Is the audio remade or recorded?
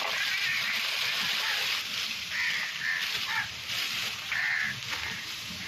recorded